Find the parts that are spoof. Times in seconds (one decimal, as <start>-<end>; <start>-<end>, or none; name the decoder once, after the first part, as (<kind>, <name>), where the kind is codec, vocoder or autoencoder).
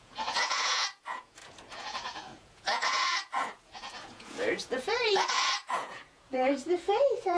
0.0-7.4 (vocoder, Vocos)